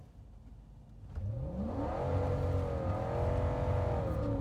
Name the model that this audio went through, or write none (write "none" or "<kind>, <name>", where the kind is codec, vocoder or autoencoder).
none